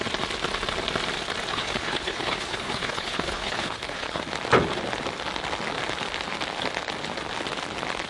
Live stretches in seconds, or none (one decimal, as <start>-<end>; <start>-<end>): 0.0-1.5; 4.2-8.1